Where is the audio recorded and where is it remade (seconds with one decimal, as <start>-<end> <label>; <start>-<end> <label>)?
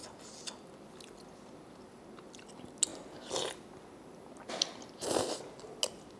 0.0-6.2 recorded